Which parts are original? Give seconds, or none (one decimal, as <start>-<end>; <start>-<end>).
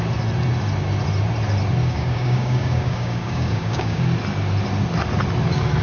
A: 0.0-1.8; 4.0-5.8